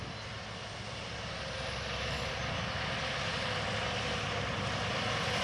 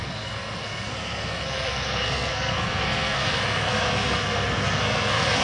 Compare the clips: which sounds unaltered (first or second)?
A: first